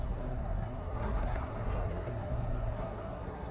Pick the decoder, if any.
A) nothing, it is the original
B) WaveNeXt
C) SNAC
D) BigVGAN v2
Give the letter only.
C